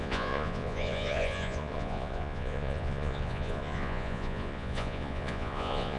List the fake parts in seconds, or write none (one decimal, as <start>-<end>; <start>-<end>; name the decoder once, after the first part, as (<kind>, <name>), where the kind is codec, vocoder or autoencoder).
0.0-6.0 (vocoder, Vocos)